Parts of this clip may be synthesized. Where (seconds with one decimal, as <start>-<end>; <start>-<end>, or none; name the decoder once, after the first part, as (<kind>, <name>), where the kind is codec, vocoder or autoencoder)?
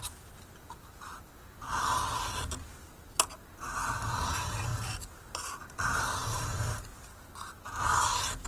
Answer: 6.2-7.2 (vocoder, BigVGAN v2)